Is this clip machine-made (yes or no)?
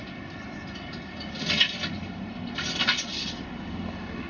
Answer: no